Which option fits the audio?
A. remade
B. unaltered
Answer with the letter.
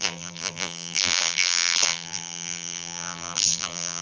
A